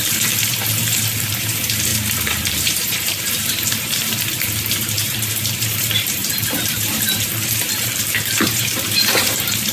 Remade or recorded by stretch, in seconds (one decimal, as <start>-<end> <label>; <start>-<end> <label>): 0.0-9.7 remade